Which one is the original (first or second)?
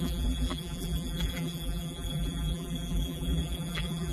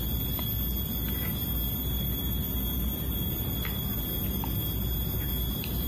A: second